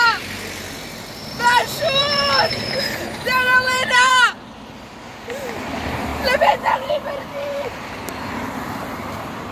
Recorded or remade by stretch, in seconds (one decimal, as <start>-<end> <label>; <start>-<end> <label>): 0.0-6.1 remade; 6.1-6.8 recorded; 6.8-9.5 remade